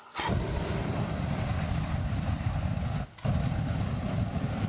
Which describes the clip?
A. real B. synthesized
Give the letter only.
A